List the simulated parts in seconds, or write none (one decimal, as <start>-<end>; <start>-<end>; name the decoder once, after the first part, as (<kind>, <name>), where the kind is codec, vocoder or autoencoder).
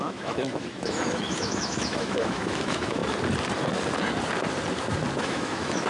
0.0-3.0 (autoencoder, DAC-VAE); 5.2-5.9